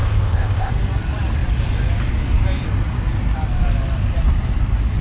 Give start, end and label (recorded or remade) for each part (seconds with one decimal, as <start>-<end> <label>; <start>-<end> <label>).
0.0-0.7 remade; 0.7-5.0 recorded

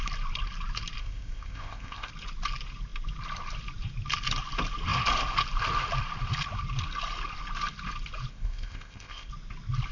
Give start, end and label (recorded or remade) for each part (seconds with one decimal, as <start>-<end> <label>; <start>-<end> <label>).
0.0-1.0 recorded; 1.0-2.1 remade; 2.1-8.3 recorded; 8.3-9.3 remade; 9.3-9.9 recorded